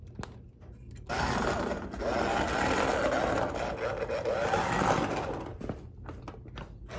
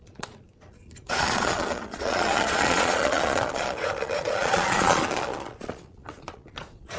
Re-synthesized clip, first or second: second